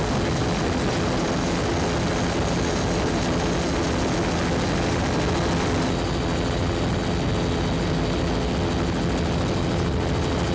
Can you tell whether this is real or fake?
real